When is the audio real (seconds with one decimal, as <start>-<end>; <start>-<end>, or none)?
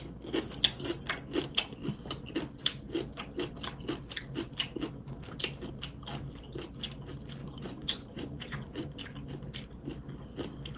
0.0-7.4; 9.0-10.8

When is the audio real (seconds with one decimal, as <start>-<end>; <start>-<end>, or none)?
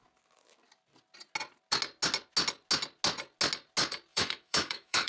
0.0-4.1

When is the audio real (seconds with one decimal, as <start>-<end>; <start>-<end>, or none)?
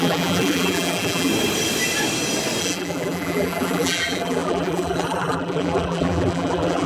1.3-2.6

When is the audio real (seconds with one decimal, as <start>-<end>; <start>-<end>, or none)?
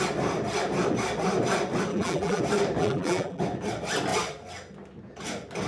0.0-1.9; 2.4-2.8; 3.4-5.7